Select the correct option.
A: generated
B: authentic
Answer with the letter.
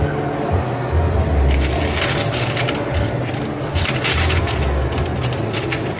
B